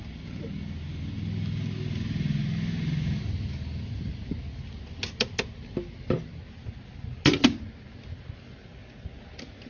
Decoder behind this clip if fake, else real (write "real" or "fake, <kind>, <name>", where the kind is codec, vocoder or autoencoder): real